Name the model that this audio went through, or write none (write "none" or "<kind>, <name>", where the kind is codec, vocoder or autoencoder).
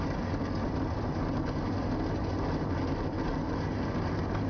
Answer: none